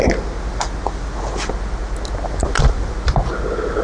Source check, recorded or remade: recorded